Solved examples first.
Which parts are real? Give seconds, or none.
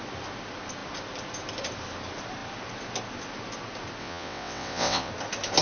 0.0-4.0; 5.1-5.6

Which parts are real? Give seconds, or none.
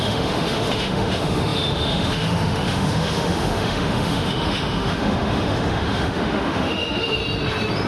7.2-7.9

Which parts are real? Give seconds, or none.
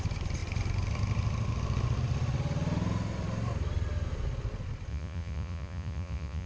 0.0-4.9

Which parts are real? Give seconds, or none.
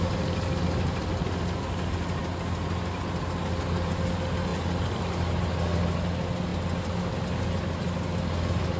0.0-8.8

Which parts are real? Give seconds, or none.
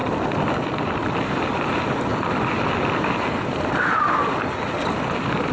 0.0-5.5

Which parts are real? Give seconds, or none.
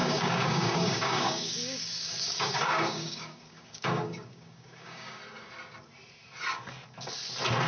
5.2-7.7